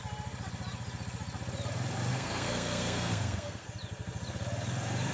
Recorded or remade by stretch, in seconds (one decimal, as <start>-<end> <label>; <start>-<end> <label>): 0.0-2.1 recorded; 2.1-3.7 remade; 3.7-5.1 recorded